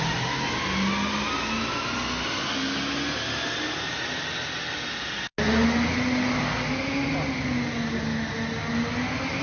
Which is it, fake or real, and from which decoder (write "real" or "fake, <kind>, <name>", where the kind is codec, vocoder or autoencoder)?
real